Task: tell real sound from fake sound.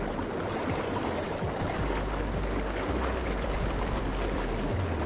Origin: real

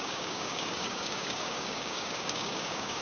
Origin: fake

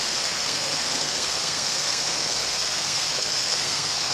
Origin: fake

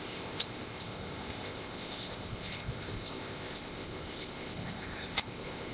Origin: fake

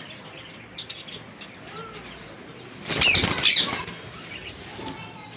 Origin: fake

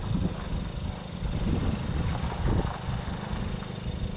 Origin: real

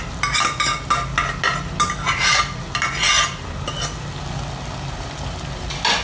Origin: real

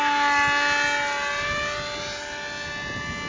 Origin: real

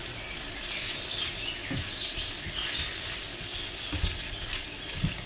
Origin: real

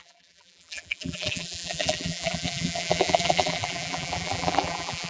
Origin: fake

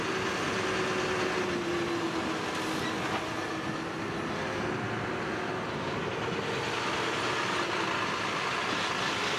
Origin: real